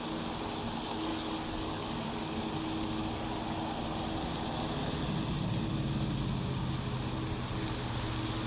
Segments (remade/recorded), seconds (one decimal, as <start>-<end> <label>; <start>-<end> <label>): 0.0-1.1 recorded; 1.1-2.2 remade; 2.2-8.5 recorded